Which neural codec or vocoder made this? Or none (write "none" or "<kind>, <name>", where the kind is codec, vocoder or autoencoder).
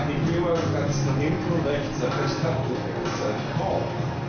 none